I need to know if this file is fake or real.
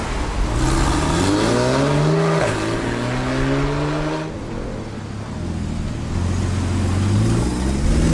real